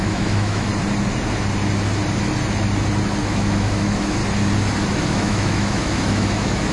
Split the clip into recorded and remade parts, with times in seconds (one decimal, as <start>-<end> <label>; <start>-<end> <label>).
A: 0.0-0.7 remade; 0.7-3.2 recorded; 3.2-4.2 remade; 4.2-4.9 recorded; 4.9-6.7 remade